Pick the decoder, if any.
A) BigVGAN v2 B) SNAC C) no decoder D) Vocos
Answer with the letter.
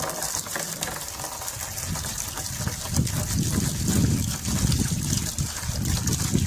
C